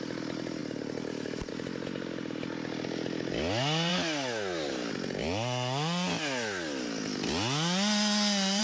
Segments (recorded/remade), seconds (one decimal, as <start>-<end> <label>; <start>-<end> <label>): 0.0-8.6 recorded